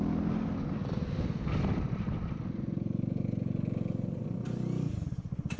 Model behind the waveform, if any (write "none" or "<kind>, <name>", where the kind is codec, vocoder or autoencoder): none